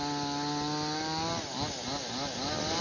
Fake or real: real